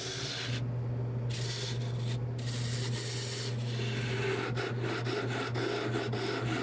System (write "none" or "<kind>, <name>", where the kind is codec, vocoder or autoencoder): none